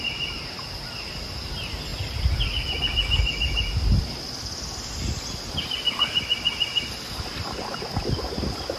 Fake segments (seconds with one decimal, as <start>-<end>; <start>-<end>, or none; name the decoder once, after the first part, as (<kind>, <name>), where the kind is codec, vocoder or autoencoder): none

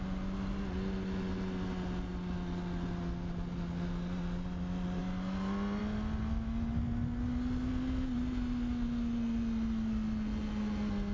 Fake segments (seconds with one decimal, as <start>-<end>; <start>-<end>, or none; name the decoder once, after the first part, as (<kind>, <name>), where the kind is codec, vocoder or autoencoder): none

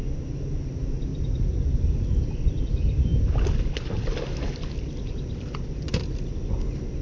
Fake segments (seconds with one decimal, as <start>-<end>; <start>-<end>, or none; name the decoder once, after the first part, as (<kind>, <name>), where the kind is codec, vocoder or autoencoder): 1.1-2.2 (vocoder, BigVGAN v2)

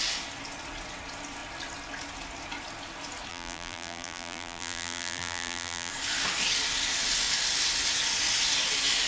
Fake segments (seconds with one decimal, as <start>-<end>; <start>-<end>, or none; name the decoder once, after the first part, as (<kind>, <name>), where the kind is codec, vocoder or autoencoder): 3.3-5.9 (vocoder, BigVGAN v2)

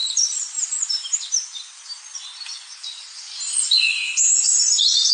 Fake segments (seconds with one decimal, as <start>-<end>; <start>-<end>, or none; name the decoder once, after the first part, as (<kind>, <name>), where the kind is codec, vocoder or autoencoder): 0.0-2.0 (vocoder, BigVGAN v2); 2.5-3.2

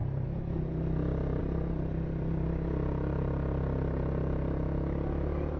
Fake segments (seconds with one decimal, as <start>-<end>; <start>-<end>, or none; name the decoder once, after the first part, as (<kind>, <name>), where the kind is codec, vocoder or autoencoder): none

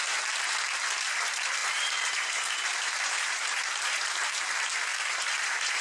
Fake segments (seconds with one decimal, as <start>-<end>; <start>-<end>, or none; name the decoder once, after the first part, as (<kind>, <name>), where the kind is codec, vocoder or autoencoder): 1.6-4.5 (vocoder, BigVGAN v2); 4.9-5.8